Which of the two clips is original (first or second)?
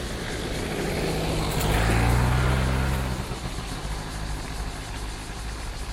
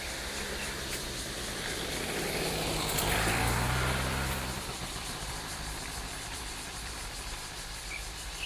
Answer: first